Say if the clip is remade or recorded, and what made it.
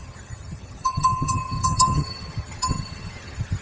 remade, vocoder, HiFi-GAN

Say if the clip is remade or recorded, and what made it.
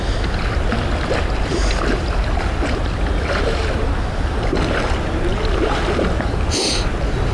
recorded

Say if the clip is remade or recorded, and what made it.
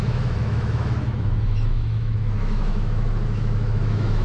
remade, autoencoder, DAC-VAE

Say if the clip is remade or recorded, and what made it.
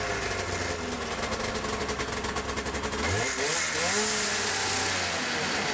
recorded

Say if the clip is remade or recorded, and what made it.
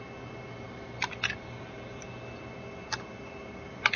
recorded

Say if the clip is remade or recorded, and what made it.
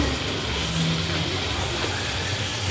recorded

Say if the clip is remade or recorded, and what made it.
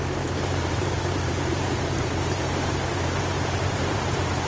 remade, vocoder, BigVGAN v2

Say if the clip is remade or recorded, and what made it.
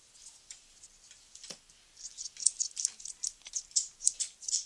recorded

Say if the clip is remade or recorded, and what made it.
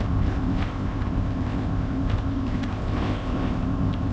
remade, codec, ZipCodec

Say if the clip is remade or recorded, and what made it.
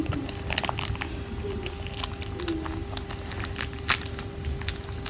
recorded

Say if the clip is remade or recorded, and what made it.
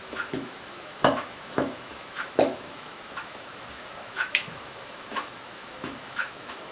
remade, autoencoder, DAC-VAE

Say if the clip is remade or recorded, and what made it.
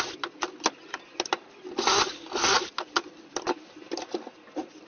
recorded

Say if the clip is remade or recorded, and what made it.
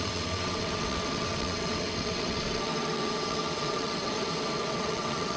remade, vocoder, WaveNeXt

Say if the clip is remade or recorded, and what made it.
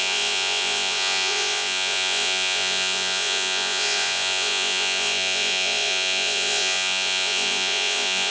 remade, vocoder, Vocos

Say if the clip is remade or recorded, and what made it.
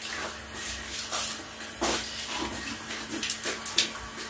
recorded